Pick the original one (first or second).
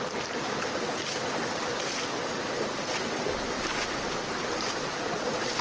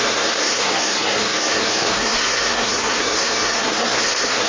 first